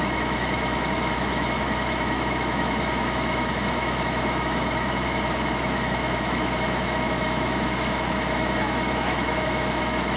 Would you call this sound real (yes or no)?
no